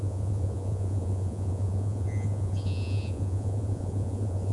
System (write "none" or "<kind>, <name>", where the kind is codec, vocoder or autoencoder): vocoder, Vocos